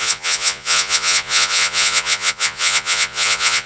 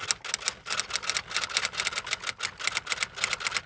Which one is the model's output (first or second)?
first